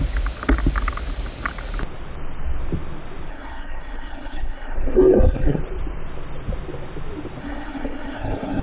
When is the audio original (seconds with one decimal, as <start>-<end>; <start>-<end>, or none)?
0.0-3.3; 5.6-7.4